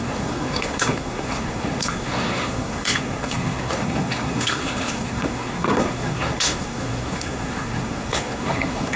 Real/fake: fake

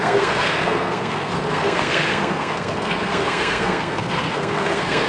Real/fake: fake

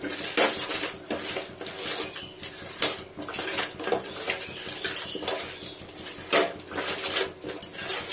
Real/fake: real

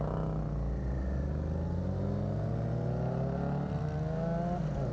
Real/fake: real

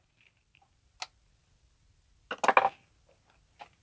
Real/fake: real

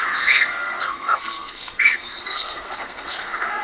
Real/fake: fake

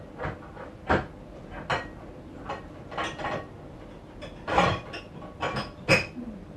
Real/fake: real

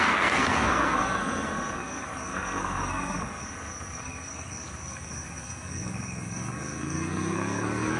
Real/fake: fake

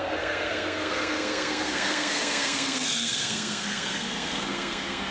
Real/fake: fake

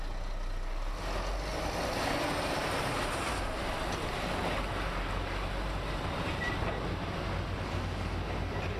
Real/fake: real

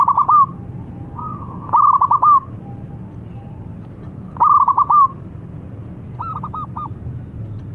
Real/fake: real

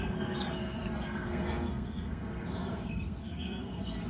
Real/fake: fake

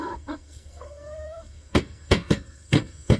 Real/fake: fake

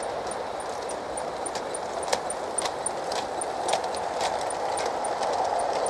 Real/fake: real